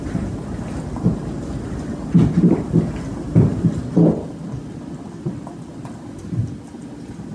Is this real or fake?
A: real